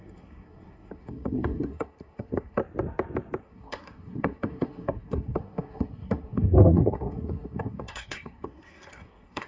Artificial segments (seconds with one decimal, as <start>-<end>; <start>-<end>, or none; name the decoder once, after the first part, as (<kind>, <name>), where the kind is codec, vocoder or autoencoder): 0.0-2.6 (codec, SNAC); 3.4-9.5